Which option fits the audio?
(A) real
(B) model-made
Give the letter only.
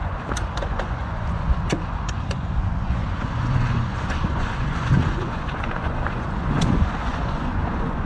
B